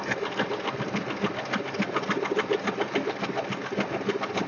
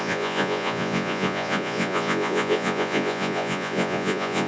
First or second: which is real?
first